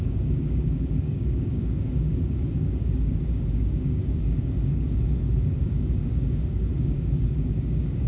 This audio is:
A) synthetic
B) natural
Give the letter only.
A